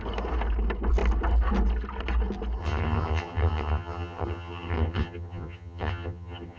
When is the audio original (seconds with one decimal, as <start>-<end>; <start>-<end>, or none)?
0.0-2.6